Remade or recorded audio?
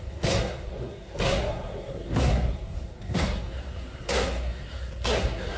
remade